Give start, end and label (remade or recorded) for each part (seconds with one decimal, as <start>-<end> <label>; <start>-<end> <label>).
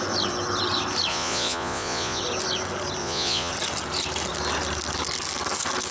0.0-1.1 recorded; 1.1-2.2 remade; 2.2-3.0 recorded; 3.0-3.5 remade; 3.5-5.9 recorded